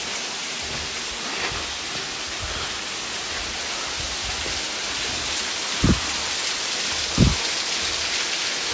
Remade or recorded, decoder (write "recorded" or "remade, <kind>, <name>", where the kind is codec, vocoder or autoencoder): recorded